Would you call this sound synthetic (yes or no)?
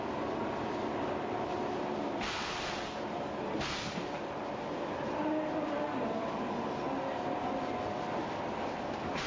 no